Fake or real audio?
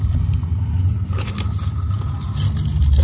real